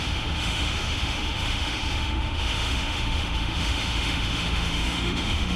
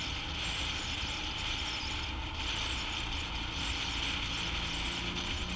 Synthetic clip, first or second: first